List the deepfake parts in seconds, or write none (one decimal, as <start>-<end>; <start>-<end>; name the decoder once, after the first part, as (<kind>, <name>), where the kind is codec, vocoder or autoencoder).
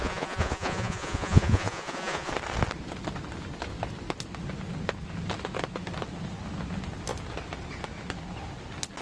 0.0-2.3 (vocoder, Vocos)